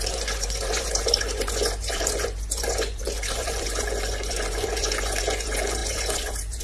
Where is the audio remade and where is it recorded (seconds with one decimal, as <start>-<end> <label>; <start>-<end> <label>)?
0.0-6.6 remade